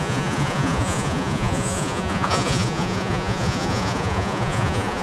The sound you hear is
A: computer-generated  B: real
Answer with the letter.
A